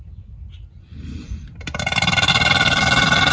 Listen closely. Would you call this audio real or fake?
fake